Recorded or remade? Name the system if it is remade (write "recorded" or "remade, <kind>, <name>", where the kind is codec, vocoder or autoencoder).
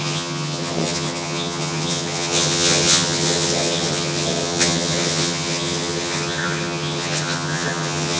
remade, vocoder, HiFi-GAN